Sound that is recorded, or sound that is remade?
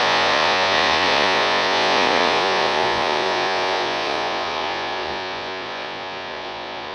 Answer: remade